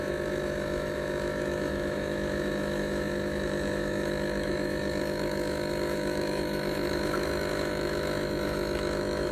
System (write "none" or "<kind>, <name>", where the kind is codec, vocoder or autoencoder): autoencoder, DAC-VAE